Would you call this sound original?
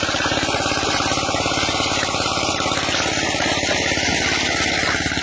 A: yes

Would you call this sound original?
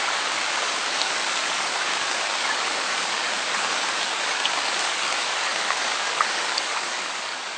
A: no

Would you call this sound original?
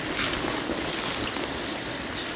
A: yes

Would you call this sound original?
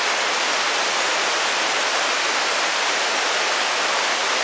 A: yes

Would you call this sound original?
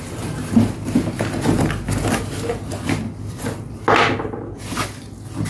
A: yes